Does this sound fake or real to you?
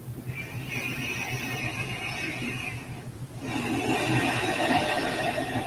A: real